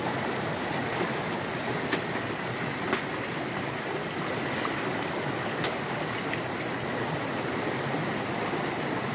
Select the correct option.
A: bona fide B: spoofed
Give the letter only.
A